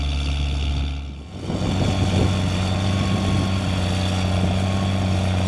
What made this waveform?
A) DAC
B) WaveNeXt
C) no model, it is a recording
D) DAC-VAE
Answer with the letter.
C